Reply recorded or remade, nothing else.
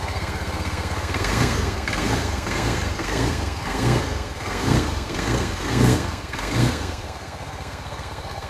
remade